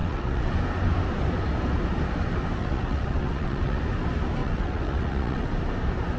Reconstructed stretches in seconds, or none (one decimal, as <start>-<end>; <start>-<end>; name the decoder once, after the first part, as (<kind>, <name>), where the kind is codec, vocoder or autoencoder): 0.0-0.5 (vocoder, WaveNeXt); 2.6-3.8; 4.4-5.5